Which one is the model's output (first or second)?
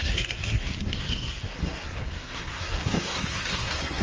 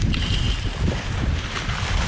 first